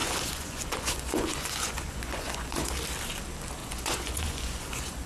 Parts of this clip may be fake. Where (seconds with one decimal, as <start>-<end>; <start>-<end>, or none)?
0.0-2.7; 3.6-5.1